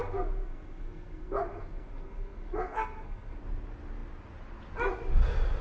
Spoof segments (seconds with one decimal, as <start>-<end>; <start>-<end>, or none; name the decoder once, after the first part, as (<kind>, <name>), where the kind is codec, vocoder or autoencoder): 0.0-3.4 (codec, SNAC)